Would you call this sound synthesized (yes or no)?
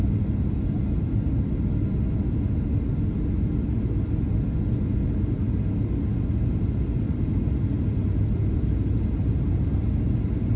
no